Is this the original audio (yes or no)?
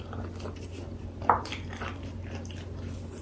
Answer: yes